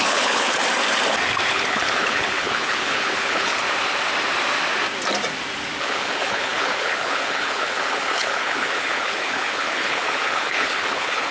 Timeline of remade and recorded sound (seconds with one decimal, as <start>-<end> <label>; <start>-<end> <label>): 0.0-0.6 remade; 0.6-1.5 recorded; 1.5-3.6 remade; 3.6-5.8 recorded; 5.8-11.3 remade

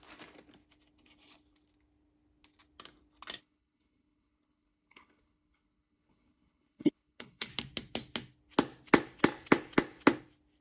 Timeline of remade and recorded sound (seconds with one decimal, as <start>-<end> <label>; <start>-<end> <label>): 0.0-3.4 recorded; 3.4-7.5 remade; 7.5-10.6 recorded